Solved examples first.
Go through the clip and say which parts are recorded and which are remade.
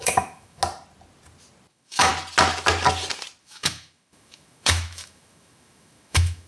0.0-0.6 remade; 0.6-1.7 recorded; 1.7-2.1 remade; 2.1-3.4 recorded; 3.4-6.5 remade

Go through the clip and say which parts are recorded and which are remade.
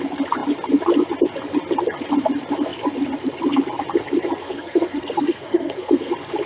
0.0-4.4 recorded; 4.4-6.1 remade; 6.1-6.5 recorded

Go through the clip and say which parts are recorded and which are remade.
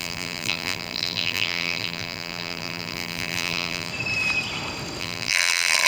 0.0-3.9 remade; 3.9-5.0 recorded; 5.0-5.9 remade